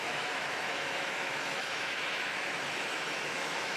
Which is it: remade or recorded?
remade